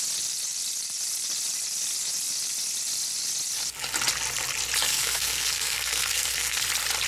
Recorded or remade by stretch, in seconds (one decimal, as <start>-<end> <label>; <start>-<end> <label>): 0.0-4.9 recorded; 4.9-6.6 remade; 6.6-7.1 recorded